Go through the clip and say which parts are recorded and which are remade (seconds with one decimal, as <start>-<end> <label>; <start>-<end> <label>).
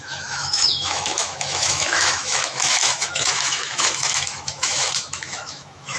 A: 0.0-6.0 remade